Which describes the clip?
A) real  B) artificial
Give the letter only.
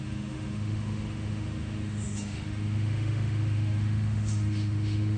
B